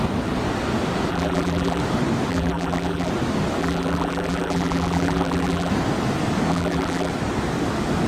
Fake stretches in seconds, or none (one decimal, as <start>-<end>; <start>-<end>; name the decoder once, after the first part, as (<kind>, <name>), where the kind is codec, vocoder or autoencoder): 1.1-1.8 (vocoder, BigVGAN v2); 2.3-3.1; 3.6-5.7; 6.5-7.1